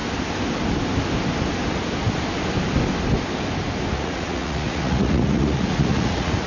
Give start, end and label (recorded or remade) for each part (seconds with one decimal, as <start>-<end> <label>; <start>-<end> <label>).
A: 0.0-3.9 recorded; 3.9-6.5 remade